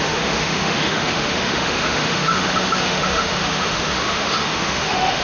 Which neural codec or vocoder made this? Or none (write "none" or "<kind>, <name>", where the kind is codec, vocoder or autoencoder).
autoencoder, DAC-VAE